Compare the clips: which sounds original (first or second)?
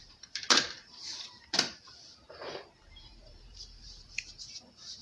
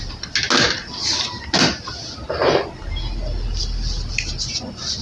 second